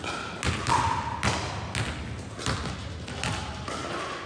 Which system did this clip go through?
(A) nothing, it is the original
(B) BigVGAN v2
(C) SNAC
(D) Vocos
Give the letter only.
A